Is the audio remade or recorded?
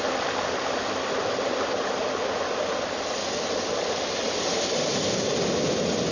recorded